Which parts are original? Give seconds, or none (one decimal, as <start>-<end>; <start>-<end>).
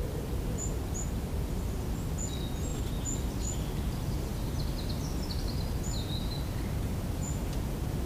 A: 0.0-8.1